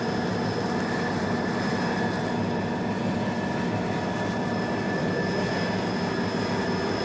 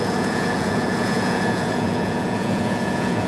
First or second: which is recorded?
first